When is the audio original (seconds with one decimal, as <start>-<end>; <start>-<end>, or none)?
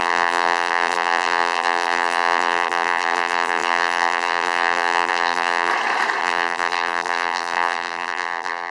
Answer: 5.7-6.2